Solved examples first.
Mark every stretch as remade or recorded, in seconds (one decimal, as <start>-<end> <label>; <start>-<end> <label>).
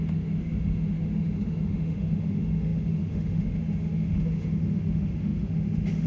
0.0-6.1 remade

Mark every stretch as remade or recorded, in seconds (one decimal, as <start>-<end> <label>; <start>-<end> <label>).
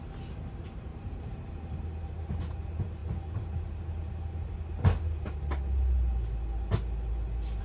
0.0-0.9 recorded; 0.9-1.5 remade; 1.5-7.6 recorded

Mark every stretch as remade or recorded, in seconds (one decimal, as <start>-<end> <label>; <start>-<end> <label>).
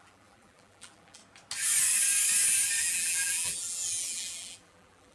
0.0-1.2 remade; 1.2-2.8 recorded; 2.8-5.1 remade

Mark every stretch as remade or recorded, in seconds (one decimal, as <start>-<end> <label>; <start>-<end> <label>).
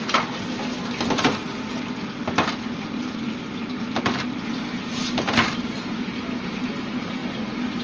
0.0-7.8 recorded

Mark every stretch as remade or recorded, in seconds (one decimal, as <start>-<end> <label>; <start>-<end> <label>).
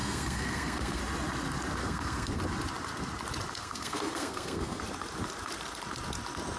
0.0-1.0 remade; 1.0-1.8 recorded; 1.8-2.4 remade; 2.4-3.6 recorded; 3.6-4.8 remade; 4.8-6.6 recorded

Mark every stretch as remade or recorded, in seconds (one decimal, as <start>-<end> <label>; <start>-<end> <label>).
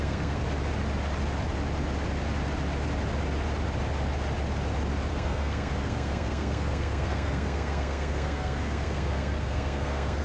0.0-0.4 remade; 0.4-5.1 recorded; 5.1-10.2 remade